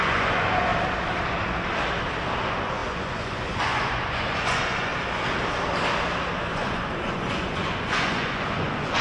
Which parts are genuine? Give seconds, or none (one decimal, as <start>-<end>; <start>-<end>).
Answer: 0.7-2.4; 4.9-6.5